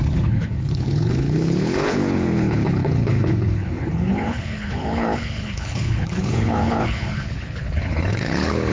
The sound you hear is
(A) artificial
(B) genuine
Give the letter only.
A